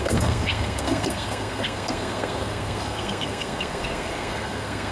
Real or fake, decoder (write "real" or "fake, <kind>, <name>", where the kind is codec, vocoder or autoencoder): fake, codec, SNAC